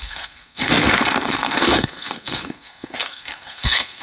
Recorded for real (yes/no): no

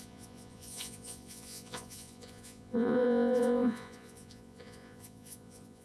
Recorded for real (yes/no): no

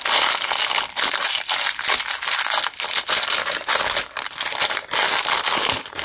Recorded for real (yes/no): yes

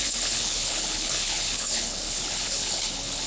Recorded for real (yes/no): no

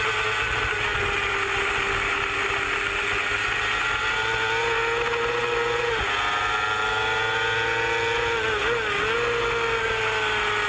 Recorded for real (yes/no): yes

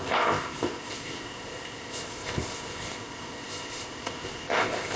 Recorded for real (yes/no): no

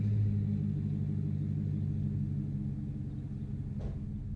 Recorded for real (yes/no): yes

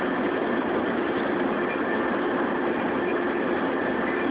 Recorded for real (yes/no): yes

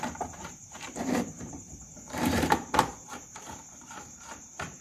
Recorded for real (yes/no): no